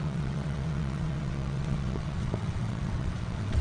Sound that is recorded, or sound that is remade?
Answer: remade